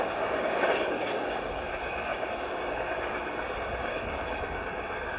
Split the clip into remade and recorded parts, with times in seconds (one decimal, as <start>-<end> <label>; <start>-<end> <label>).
0.0-3.2 remade; 3.2-3.8 recorded; 3.8-5.2 remade